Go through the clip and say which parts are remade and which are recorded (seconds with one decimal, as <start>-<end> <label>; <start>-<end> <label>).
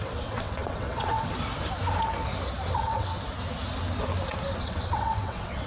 0.0-1.3 remade; 1.3-2.7 recorded; 2.7-3.1 remade; 3.1-4.6 recorded; 4.6-5.7 remade